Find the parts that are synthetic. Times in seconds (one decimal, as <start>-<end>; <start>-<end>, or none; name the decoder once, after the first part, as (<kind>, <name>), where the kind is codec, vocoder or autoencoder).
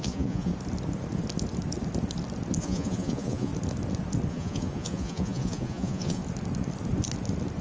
0.0-0.5 (vocoder, Vocos); 2.6-3.5; 4.3-6.2